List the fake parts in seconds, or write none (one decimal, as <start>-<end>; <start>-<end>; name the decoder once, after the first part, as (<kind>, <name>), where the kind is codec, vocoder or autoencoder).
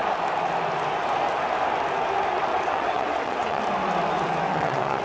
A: 2.5-3.6 (vocoder, WaveNeXt); 4.5-5.0